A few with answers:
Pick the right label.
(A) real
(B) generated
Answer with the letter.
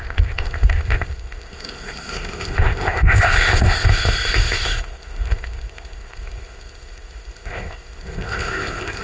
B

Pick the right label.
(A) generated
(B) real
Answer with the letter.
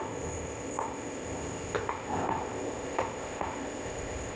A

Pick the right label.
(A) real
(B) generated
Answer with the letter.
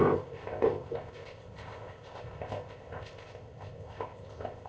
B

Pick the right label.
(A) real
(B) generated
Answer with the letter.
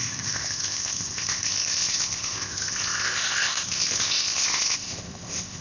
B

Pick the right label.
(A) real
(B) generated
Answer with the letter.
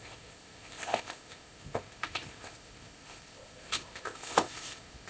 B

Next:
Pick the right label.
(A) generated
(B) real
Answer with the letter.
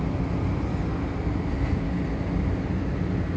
B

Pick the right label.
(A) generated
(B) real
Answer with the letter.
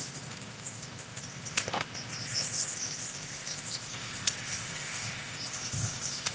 A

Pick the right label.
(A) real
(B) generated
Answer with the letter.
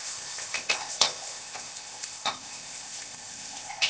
B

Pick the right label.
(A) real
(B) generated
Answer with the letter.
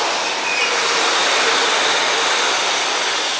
A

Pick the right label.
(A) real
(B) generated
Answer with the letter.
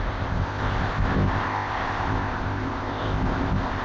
B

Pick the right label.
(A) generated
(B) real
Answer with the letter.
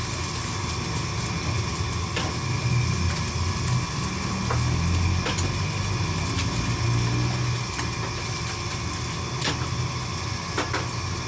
B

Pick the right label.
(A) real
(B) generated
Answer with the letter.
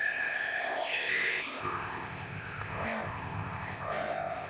B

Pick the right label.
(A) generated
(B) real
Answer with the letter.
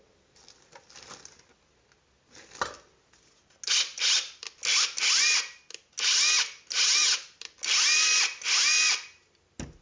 B